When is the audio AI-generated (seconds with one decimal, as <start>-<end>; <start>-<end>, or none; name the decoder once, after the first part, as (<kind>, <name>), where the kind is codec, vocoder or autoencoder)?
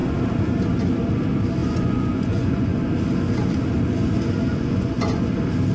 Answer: 1.6-2.8 (vocoder, Vocos); 4.5-5.3